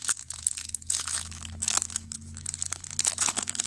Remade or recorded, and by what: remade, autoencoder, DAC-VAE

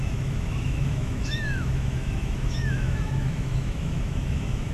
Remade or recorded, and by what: remade, autoencoder, DAC-VAE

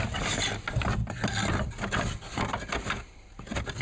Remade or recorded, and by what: recorded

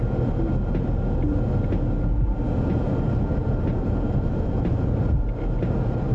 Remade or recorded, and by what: recorded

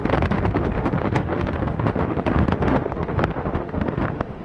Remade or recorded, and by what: remade, autoencoder, DAC-VAE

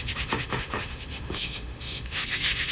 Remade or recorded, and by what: remade, autoencoder, DAC-VAE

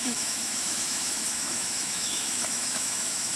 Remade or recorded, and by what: remade, autoencoder, DAC-VAE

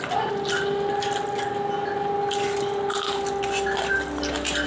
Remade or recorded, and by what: recorded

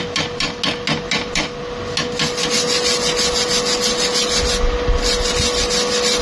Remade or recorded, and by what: recorded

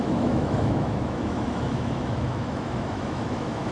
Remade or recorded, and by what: remade, autoencoder, DAC-VAE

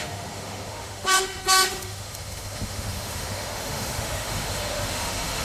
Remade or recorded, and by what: remade, autoencoder, DAC-VAE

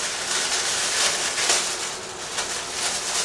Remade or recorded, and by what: recorded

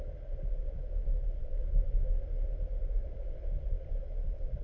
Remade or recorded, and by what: recorded